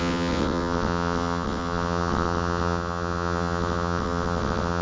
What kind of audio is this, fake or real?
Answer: fake